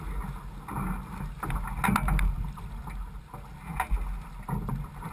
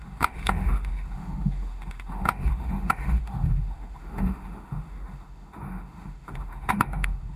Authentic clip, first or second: first